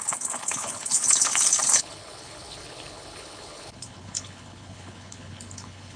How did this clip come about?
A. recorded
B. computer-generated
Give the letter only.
B